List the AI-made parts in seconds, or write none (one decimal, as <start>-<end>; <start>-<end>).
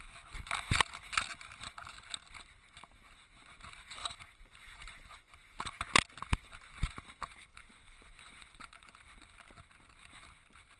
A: 4.0-5.7; 7.5-9.0